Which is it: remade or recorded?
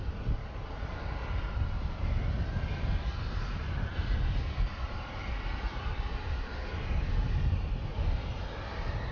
recorded